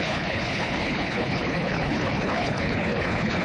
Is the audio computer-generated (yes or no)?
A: yes